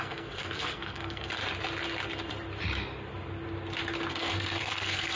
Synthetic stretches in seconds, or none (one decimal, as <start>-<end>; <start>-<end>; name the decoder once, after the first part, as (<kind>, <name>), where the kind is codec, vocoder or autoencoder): 0.0-1.4 (codec, SNAC); 4.1-5.2